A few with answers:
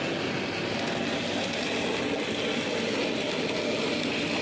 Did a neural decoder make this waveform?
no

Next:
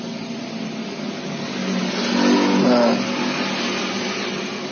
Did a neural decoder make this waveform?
no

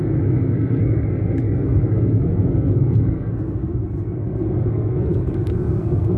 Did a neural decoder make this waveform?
yes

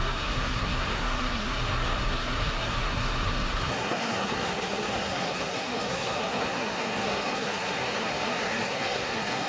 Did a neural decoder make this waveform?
yes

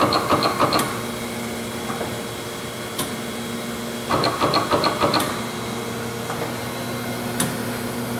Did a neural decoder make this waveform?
no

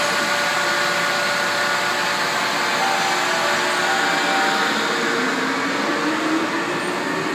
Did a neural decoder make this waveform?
no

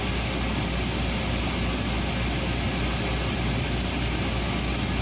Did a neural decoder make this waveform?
no